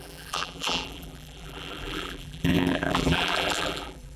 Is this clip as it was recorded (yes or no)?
no